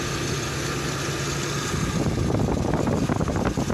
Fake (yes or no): no